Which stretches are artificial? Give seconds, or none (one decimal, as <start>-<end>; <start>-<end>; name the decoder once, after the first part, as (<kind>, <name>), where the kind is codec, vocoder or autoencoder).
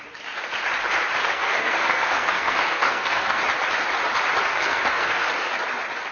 1.2-3.4 (codec, SNAC); 4.5-5.3